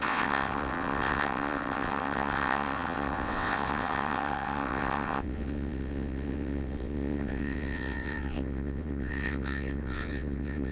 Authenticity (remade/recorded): remade